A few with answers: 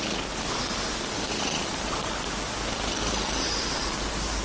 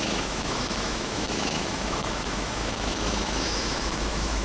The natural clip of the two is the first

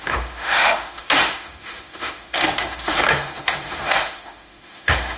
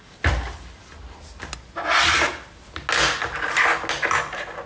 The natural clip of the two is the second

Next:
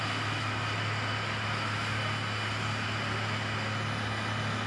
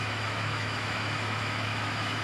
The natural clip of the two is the first